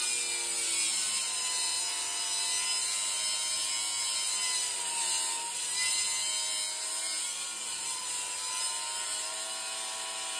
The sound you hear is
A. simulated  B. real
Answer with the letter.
B